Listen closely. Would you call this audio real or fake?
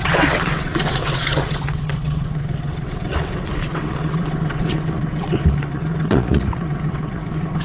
fake